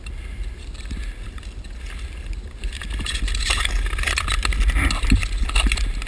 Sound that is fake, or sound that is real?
real